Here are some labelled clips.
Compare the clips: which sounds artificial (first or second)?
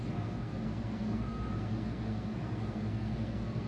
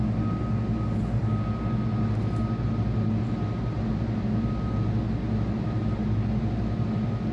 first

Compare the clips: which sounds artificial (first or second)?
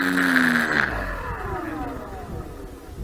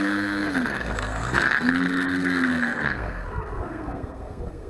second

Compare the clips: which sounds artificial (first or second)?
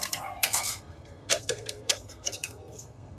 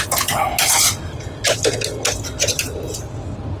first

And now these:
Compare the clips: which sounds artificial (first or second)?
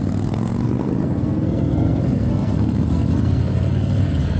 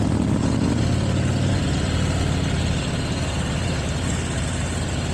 first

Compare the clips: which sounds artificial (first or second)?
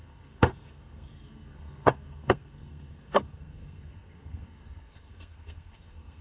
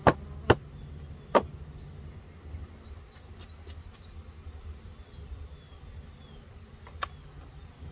first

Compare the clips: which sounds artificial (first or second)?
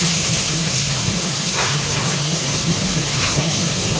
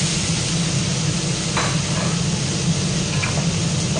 first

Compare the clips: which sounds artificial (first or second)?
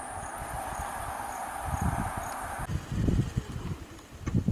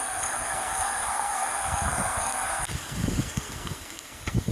second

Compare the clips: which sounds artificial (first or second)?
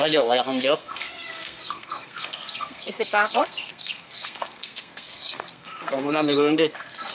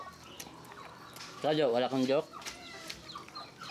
first